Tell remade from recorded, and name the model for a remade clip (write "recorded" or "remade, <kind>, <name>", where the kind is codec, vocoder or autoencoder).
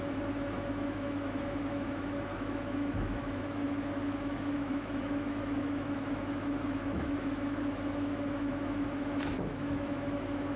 remade, autoencoder, DAC-VAE